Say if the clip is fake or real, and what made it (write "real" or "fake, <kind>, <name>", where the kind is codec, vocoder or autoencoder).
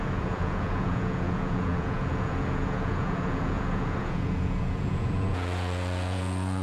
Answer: fake, vocoder, Vocos